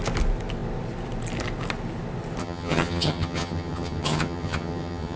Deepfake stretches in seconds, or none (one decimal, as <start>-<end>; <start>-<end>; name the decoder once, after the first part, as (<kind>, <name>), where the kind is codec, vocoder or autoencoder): 2.4-5.2 (vocoder, HiFi-GAN)